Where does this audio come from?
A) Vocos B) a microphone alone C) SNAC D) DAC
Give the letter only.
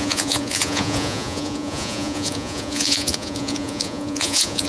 A